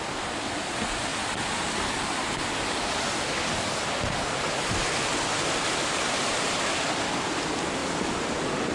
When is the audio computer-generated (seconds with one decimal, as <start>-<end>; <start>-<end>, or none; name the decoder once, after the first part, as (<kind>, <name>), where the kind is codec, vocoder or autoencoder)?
7.8-8.7 (vocoder, BigVGAN v2)

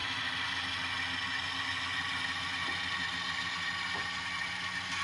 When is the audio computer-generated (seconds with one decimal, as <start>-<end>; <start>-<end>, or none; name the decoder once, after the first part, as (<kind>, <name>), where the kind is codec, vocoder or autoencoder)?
none

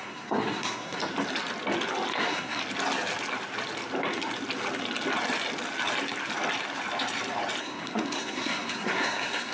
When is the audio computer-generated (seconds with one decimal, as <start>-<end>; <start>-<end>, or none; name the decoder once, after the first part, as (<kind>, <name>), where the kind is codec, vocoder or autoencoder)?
0.0-1.0 (codec, SNAC); 2.1-2.6; 7.6-9.5

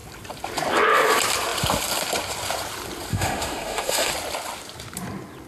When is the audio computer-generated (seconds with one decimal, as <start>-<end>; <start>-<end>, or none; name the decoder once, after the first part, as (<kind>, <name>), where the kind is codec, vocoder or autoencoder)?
3.1-4.1 (autoencoder, DAC-VAE)

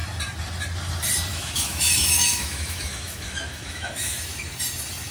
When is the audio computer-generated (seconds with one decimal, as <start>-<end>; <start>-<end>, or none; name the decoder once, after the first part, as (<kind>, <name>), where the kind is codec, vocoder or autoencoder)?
1.3-4.4 (autoencoder, DAC-VAE)

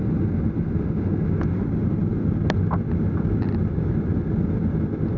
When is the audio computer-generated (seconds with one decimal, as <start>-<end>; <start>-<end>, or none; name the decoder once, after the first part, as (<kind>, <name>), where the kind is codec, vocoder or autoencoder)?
none

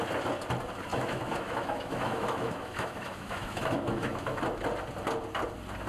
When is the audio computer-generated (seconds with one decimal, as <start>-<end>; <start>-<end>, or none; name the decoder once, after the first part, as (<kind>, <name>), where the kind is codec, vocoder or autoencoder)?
0.9-4.4 (autoencoder, DAC-VAE)